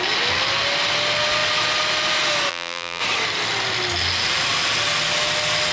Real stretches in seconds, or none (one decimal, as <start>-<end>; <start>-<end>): 0.0-2.5; 3.0-5.7